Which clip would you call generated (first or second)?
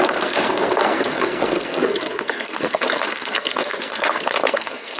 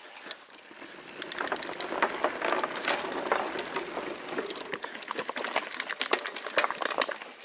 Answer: first